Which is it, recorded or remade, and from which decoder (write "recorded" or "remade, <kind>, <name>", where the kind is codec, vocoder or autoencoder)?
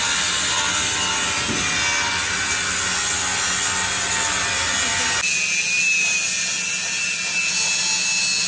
recorded